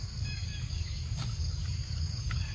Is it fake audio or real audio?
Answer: fake